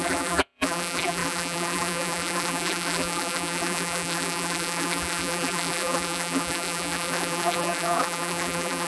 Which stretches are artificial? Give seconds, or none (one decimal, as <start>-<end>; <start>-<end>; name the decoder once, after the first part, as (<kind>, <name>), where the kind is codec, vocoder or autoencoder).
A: 0.0-8.9 (vocoder, BigVGAN v2)